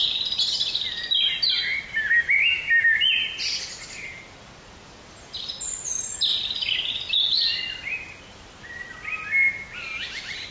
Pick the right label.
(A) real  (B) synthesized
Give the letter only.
A